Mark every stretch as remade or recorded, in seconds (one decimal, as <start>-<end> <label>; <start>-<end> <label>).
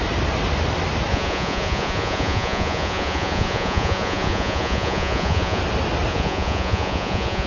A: 0.0-1.1 recorded; 1.1-5.6 remade; 5.6-6.1 recorded; 6.1-7.5 remade